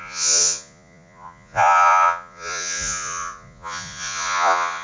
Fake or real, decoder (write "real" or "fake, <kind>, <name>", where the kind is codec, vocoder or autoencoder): fake, vocoder, Vocos